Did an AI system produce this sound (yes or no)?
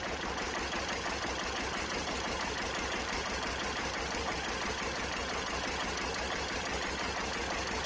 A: yes